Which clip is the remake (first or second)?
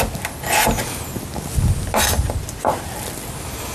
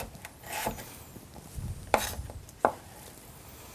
second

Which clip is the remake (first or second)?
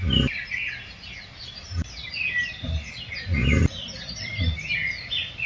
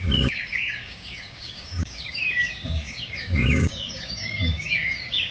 second